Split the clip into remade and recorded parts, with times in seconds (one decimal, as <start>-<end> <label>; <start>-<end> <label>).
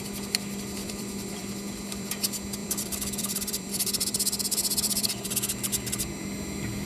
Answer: 0.0-0.8 recorded; 0.8-2.1 remade; 2.1-2.6 recorded; 2.6-5.3 remade; 5.3-6.9 recorded